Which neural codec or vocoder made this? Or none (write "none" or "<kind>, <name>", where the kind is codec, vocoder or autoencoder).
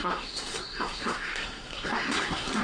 codec, SNAC